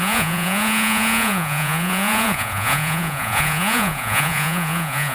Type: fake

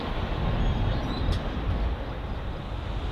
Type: real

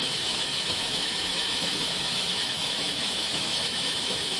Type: fake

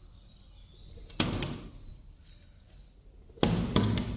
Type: real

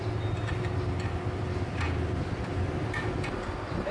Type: real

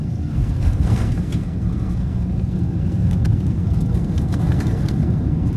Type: fake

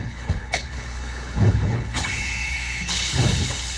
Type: fake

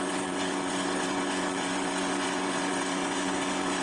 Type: fake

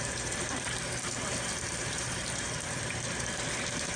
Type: fake